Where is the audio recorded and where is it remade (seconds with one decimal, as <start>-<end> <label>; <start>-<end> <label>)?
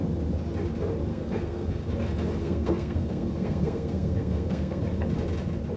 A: 0.0-1.1 recorded; 1.1-1.9 remade; 1.9-2.4 recorded; 2.4-4.8 remade; 4.8-5.8 recorded